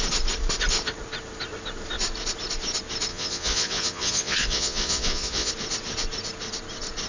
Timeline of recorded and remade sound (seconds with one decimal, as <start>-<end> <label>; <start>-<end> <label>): 0.0-3.1 recorded; 3.1-5.5 remade; 5.5-7.1 recorded